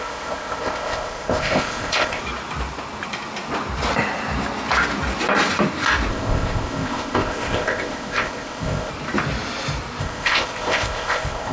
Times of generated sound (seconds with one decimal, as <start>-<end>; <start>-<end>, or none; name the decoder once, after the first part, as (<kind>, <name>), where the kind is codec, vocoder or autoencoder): 0.0-2.2 (codec, ZipCodec); 6.1-8.9; 10.0-11.5